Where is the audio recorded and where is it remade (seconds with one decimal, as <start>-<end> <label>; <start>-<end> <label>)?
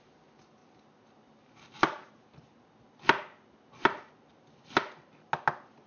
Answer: 0.0-5.9 recorded